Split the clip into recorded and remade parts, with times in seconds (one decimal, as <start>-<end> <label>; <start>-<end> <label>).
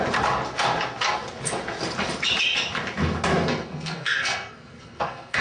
0.0-3.5 recorded; 3.5-5.4 remade